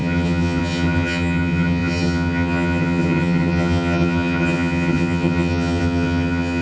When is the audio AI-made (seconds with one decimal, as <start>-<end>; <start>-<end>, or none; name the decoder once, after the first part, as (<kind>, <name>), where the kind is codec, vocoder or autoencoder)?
0.0-6.6 (vocoder, HiFi-GAN)

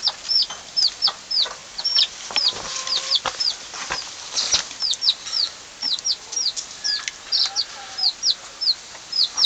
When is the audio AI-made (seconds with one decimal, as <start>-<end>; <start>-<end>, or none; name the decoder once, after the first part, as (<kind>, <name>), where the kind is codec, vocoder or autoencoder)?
1.6-3.5 (vocoder, BigVGAN v2)

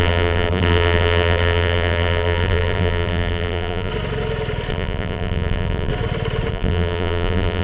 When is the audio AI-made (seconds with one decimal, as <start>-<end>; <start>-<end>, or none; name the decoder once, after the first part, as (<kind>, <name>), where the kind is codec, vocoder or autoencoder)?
0.0-3.9 (vocoder, BigVGAN v2); 4.7-5.9; 6.5-7.6

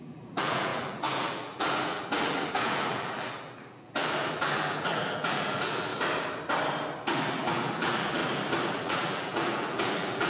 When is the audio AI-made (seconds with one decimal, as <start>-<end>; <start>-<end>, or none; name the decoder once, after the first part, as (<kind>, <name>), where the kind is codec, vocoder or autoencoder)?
0.0-5.9 (vocoder, BigVGAN v2); 7.1-8.2; 8.7-10.3

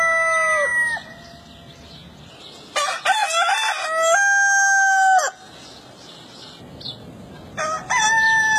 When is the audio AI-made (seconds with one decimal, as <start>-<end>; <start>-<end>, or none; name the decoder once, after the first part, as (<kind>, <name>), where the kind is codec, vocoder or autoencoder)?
none

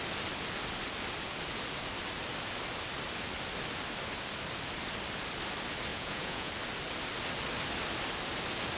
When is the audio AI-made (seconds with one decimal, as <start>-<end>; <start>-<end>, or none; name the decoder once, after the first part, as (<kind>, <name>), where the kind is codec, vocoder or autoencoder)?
5.9-6.5 (vocoder, Vocos)

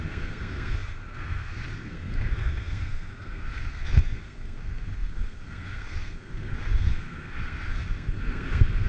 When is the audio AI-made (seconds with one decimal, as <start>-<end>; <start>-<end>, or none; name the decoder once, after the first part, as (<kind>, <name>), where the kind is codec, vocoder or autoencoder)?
0.0-8.9 (codec, SNAC)

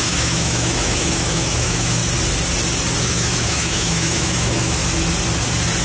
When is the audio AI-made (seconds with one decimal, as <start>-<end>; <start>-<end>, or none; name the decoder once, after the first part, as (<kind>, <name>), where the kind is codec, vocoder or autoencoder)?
0.0-2.0 (autoencoder, DAC-VAE); 3.0-4.8